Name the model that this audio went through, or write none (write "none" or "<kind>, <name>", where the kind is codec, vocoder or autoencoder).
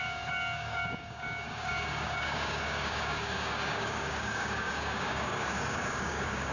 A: codec, DAC